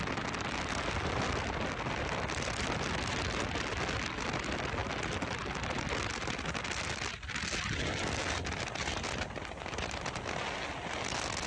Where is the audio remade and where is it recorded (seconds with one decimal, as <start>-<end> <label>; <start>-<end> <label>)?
0.0-11.5 recorded